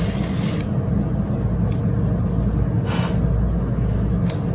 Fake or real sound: real